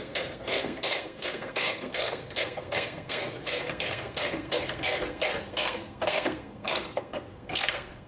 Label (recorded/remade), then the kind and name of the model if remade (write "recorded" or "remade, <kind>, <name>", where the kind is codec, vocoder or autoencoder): remade, codec, SNAC